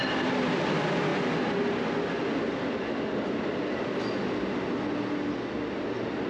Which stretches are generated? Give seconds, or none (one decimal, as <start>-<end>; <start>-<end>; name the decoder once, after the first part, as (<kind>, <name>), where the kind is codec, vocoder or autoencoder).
none